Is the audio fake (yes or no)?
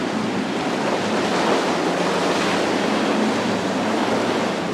no